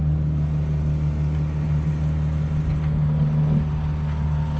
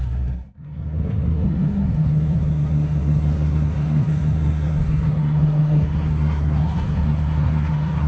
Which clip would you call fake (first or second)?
second